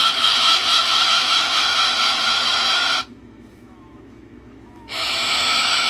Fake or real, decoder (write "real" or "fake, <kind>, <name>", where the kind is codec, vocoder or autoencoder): fake, autoencoder, DAC-VAE